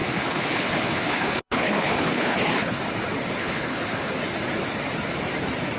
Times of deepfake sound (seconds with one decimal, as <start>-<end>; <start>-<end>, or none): 0.0-2.8; 3.4-4.1